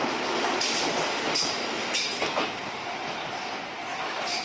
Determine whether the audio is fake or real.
real